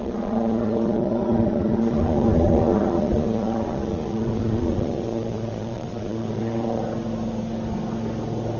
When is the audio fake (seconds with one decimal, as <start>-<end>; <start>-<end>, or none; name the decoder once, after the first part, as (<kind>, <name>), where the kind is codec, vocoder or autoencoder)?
0.0-6.8 (vocoder, Vocos)